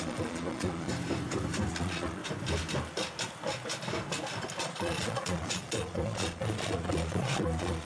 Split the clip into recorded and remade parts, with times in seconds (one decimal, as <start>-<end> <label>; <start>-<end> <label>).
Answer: 0.0-0.9 remade; 0.9-1.7 recorded; 1.7-2.2 remade; 2.2-4.6 recorded; 4.6-7.8 remade